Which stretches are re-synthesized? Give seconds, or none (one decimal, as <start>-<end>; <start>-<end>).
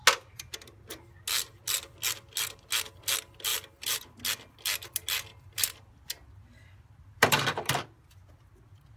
3.5-4.1; 5.3-8.3